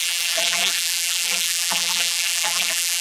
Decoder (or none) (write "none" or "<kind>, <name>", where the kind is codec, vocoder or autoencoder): vocoder, BigVGAN v2